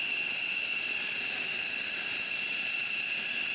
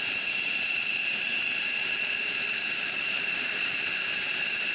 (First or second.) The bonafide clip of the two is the first